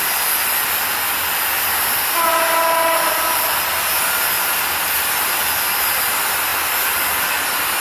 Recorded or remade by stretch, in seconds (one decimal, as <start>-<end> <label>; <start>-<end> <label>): 0.0-7.8 recorded